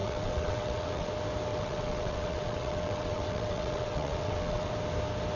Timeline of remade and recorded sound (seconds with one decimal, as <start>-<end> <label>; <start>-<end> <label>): 0.0-1.1 remade; 1.1-1.5 recorded; 1.5-4.7 remade; 4.7-5.4 recorded